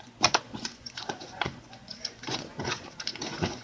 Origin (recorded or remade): remade